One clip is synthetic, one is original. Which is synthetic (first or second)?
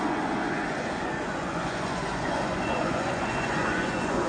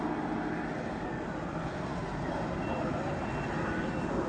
first